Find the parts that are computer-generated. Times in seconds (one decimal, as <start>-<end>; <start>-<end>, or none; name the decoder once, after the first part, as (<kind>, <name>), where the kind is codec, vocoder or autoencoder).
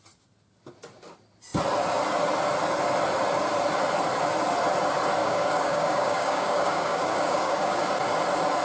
5.2-7.9 (codec, DAC)